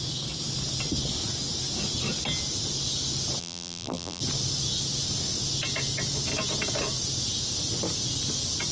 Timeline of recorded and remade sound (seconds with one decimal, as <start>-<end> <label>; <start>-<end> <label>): 0.0-3.4 recorded; 3.4-4.2 remade; 4.2-8.7 recorded